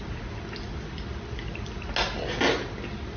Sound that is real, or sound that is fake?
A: real